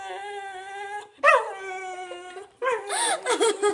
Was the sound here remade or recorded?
recorded